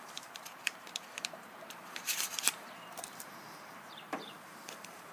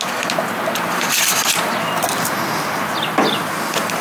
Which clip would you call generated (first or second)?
first